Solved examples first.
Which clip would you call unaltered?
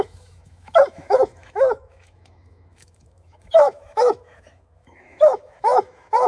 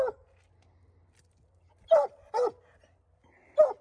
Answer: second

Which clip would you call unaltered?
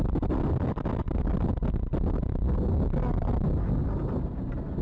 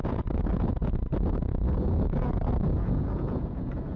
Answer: first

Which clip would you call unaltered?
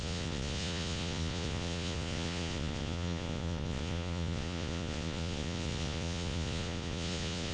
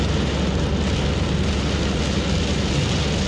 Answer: second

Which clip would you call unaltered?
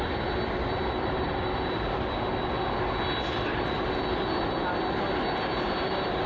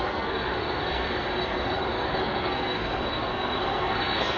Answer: first